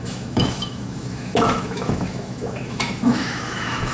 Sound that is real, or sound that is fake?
fake